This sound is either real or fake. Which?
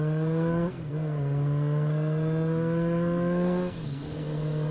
fake